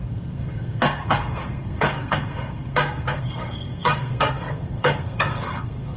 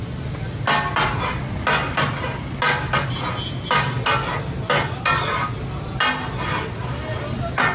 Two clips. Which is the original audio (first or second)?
second